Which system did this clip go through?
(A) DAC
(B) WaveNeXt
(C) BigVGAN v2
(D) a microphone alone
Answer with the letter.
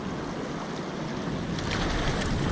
D